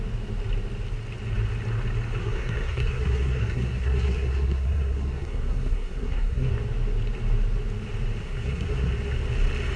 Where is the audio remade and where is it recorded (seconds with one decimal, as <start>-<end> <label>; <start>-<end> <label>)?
0.0-2.2 recorded; 2.2-6.5 remade; 6.5-8.2 recorded; 8.2-8.9 remade; 8.9-9.8 recorded